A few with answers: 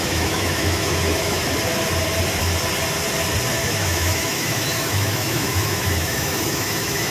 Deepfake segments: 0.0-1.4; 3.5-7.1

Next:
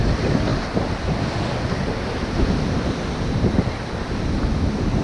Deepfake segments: none

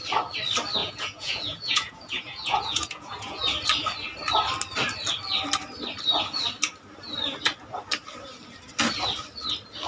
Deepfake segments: 0.8-3.4

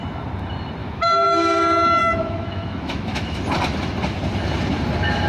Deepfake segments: 0.8-1.6; 2.0-3.4

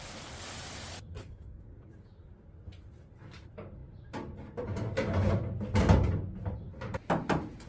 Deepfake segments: 1.2-2.2

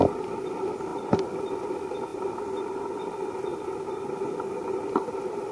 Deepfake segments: none

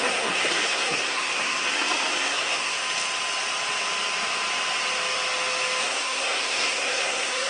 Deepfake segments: 0.0-1.6; 2.3-2.7; 5.8-7.5